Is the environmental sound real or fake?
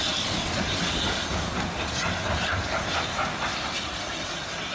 real